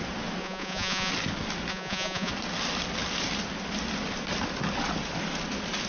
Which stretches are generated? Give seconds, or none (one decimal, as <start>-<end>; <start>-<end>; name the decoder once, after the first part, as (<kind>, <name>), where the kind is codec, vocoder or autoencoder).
0.4-1.1 (vocoder, Vocos); 1.7-2.3